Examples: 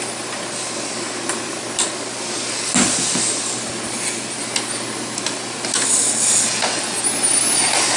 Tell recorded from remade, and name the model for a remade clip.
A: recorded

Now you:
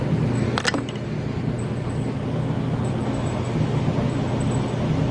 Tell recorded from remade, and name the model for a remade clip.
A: recorded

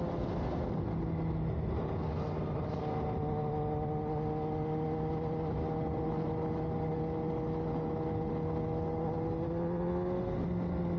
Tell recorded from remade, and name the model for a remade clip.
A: recorded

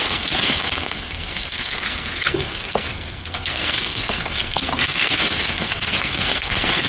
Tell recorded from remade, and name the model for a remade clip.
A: remade, codec, SNAC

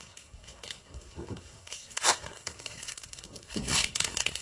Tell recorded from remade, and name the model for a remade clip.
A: remade, codec, SNAC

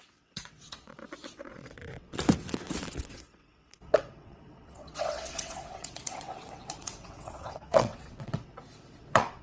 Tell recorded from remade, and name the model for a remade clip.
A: remade, vocoder, WaveNeXt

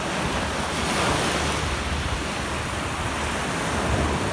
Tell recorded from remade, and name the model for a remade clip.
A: recorded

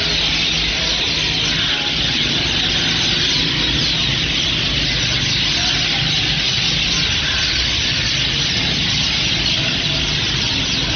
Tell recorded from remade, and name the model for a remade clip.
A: recorded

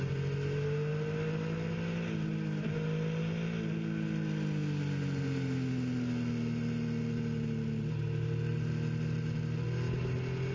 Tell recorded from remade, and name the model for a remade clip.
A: recorded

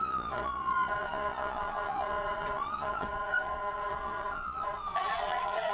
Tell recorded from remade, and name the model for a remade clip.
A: remade, vocoder, Vocos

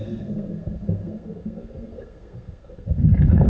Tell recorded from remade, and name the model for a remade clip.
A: remade, codec, SNAC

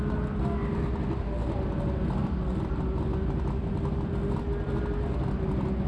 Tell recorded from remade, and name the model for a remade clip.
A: recorded